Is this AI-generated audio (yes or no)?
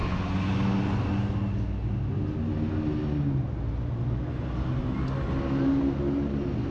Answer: no